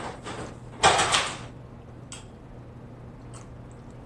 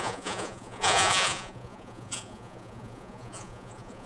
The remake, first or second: second